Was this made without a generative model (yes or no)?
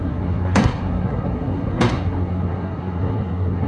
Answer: no